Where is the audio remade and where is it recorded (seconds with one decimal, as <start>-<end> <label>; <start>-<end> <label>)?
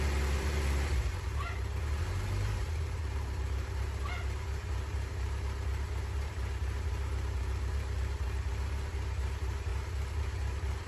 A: 0.0-9.7 remade; 9.7-10.2 recorded; 10.2-10.9 remade